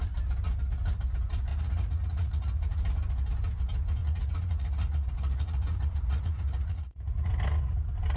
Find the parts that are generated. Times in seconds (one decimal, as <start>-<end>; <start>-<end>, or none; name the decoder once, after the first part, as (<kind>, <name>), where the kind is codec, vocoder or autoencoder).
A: 1.5-2.8 (vocoder, Vocos); 4.0-7.3